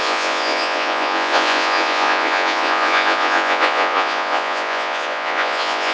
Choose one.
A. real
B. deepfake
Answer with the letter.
B